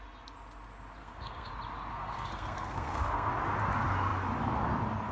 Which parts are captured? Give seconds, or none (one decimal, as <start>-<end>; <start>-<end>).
0.0-1.0; 1.5-1.9; 3.3-5.1